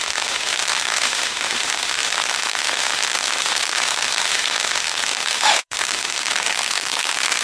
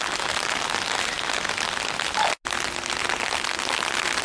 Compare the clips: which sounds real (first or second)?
second